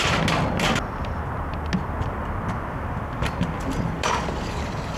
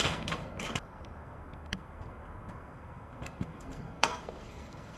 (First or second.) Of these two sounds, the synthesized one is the second